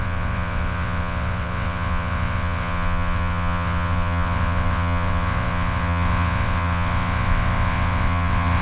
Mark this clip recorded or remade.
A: remade